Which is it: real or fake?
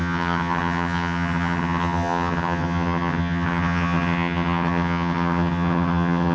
fake